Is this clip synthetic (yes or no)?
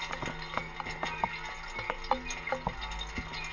no